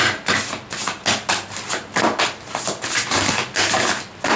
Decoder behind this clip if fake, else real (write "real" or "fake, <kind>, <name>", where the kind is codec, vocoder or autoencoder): real